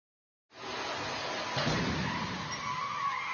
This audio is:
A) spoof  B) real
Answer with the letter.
B